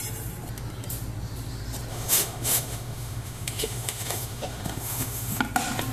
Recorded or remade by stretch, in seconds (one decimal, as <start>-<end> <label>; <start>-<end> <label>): 0.0-1.9 recorded; 1.9-5.4 remade; 5.4-5.9 recorded